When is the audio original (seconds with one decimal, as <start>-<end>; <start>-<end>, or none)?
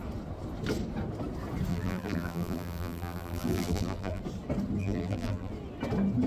0.0-1.7; 4.2-4.8; 5.5-6.3